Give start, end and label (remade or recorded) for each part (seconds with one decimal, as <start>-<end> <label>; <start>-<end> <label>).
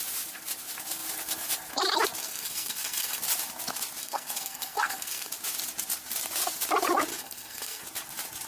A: 0.0-2.2 recorded; 2.2-3.2 remade; 3.2-4.0 recorded; 4.0-5.3 remade; 5.3-7.1 recorded; 7.1-7.8 remade; 7.8-8.5 recorded